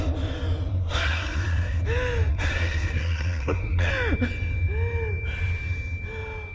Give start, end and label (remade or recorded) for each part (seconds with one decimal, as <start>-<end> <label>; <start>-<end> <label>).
0.0-0.7 recorded; 0.7-1.8 remade; 1.8-2.3 recorded; 2.3-3.9 remade; 3.9-6.5 recorded